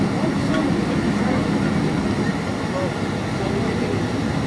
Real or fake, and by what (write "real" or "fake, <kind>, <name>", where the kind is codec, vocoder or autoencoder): real